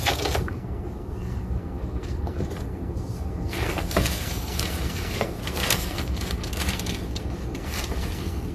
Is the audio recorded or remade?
remade